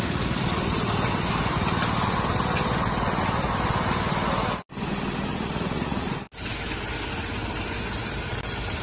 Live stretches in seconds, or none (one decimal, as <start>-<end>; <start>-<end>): 0.0-5.3; 6.1-8.8

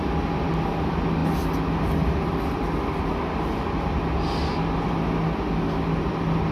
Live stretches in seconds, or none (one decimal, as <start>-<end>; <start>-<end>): 0.0-6.5

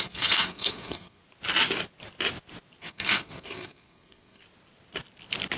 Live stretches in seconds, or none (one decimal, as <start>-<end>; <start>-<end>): 1.2-2.8; 4.4-5.6

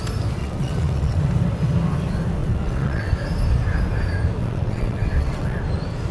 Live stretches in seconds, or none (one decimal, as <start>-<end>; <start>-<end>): 0.0-0.4; 1.3-2.4; 3.1-4.4; 5.6-6.1